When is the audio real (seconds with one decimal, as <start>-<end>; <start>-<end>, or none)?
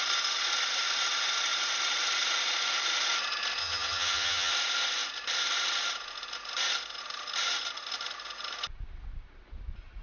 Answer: 0.0-3.6; 4.5-10.0